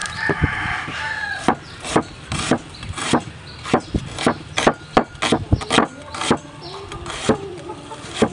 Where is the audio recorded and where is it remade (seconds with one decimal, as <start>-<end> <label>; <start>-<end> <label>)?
0.0-1.1 remade; 1.1-8.3 recorded